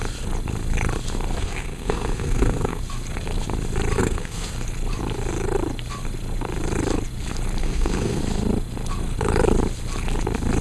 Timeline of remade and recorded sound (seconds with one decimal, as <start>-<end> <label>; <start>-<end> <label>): 0.0-1.4 recorded; 1.4-2.8 remade; 2.8-4.0 recorded; 4.0-4.5 remade; 4.5-7.6 recorded; 7.6-8.2 remade; 8.2-10.6 recorded